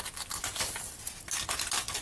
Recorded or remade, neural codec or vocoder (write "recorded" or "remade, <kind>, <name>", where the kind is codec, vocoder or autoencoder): recorded